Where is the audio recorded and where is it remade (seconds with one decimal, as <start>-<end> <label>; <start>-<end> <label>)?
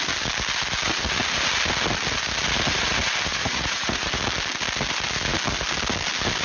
0.0-3.3 recorded; 3.3-4.0 remade; 4.0-6.4 recorded